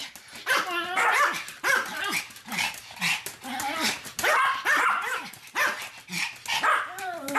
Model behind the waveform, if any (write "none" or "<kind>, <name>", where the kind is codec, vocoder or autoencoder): none